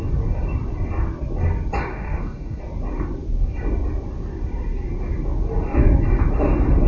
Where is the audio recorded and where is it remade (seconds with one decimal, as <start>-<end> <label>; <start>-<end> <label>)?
0.0-1.9 recorded; 1.9-2.6 remade; 2.6-6.9 recorded